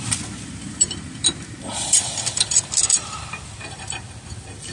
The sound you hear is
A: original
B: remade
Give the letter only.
B